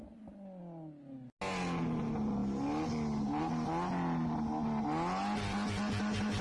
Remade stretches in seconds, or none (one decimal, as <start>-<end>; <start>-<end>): none